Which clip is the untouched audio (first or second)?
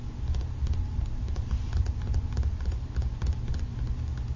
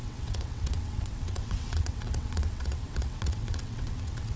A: first